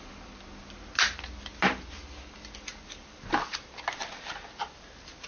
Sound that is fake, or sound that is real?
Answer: real